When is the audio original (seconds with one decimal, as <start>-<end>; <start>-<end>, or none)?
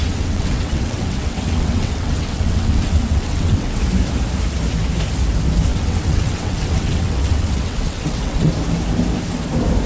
3.8-5.7; 8.5-9.9